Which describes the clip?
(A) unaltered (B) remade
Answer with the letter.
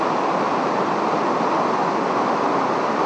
A